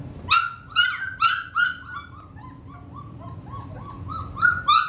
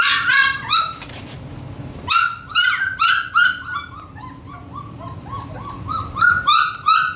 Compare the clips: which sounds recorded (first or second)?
first